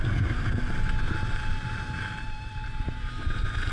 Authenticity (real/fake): real